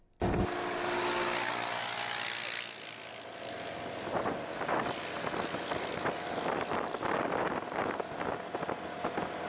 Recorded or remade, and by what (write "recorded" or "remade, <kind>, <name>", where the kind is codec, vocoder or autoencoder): recorded